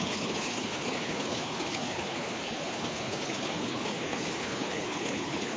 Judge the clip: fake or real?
fake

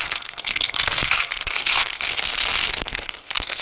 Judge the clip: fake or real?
fake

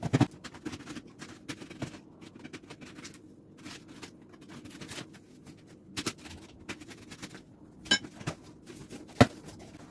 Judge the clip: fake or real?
real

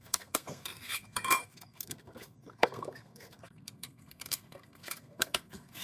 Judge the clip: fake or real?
fake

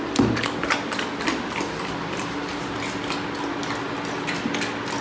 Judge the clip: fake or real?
real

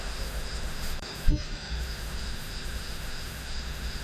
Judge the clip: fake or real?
fake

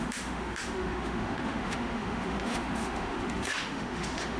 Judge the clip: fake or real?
fake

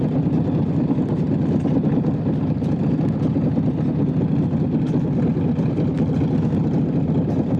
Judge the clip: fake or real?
real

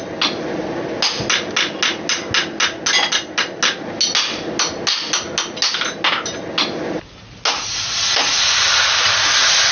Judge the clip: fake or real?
real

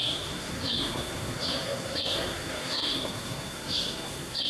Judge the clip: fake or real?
fake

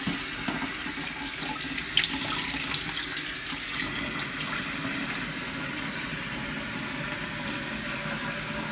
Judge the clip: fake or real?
real